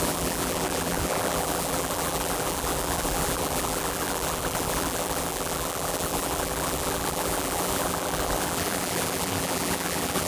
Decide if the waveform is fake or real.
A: fake